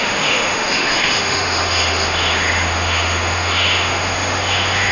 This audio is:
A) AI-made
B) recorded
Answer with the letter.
A